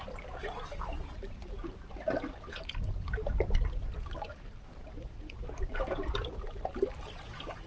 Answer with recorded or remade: remade